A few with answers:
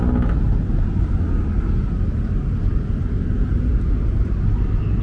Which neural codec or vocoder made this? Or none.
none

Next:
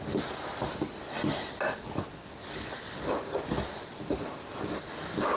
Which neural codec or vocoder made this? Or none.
none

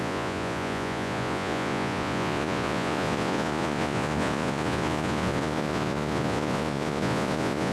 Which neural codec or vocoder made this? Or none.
vocoder, Vocos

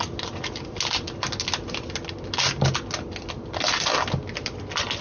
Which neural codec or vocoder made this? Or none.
none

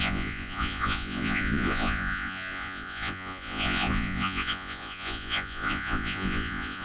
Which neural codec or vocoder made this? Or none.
vocoder, Vocos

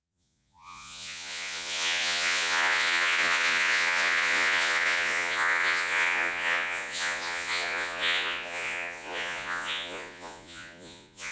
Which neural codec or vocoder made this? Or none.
vocoder, Vocos